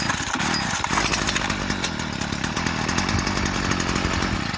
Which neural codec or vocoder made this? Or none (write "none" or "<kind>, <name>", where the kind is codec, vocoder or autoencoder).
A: none